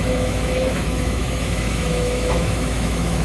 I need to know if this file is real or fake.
fake